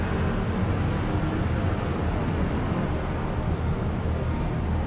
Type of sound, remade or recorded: recorded